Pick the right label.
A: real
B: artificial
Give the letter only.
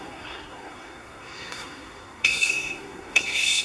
B